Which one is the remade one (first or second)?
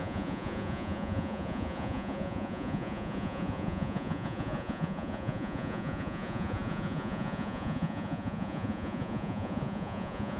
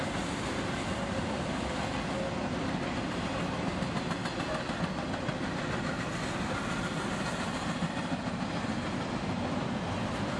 first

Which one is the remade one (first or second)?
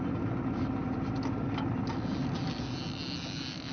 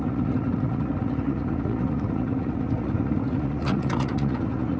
second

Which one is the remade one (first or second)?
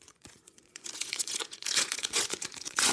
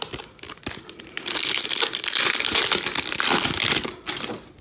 first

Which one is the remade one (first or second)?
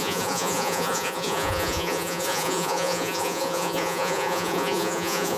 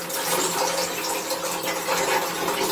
first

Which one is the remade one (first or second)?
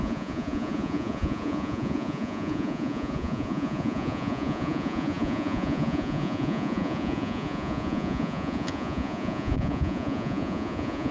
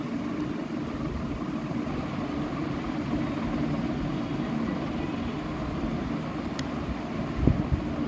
first